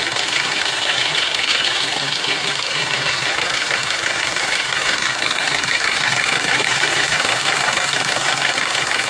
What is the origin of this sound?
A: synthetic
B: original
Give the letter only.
A